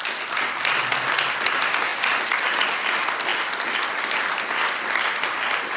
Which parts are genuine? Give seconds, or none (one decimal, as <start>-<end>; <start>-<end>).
0.0-5.8